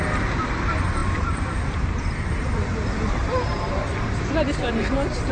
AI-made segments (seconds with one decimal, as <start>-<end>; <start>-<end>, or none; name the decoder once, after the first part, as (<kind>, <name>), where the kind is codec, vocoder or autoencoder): 1.0-4.2 (vocoder, BigVGAN v2)